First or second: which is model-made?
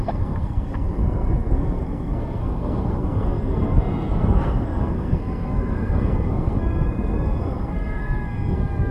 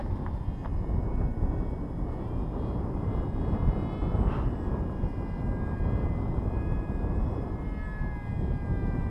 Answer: first